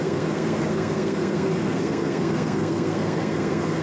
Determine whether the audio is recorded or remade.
remade